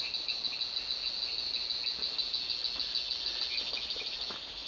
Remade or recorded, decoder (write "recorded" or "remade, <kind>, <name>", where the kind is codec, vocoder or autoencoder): recorded